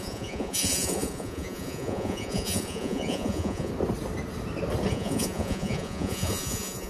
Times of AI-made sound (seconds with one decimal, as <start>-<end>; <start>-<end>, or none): 0.0-3.7; 4.9-6.9